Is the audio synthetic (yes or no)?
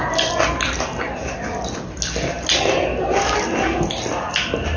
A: no